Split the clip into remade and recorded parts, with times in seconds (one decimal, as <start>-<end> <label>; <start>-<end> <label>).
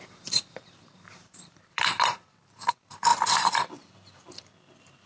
0.0-3.1 remade; 3.1-5.1 recorded